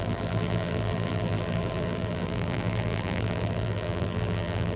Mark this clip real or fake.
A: fake